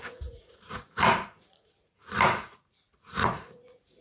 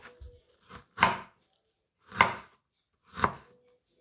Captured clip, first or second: second